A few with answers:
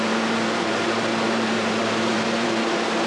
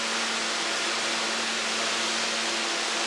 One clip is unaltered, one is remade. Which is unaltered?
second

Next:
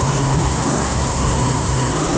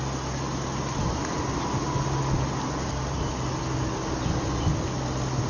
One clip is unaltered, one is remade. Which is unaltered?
second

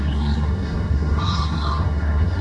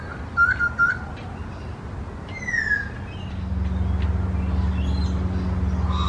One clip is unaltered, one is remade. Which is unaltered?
second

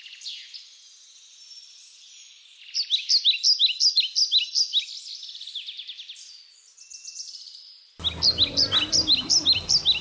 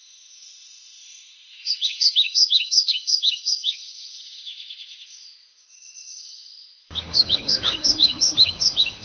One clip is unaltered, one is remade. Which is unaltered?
first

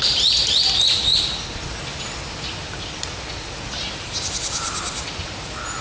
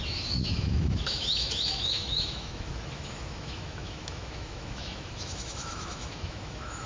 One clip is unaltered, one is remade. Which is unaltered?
first